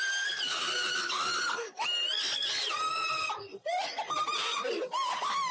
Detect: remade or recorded recorded